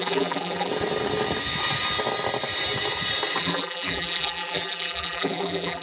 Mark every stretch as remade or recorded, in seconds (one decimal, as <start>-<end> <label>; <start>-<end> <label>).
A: 0.0-0.7 remade; 0.7-3.4 recorded; 3.4-5.8 remade